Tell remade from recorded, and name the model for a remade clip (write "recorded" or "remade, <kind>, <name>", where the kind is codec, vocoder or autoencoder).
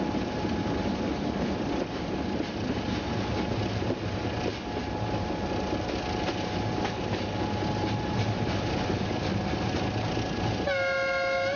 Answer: recorded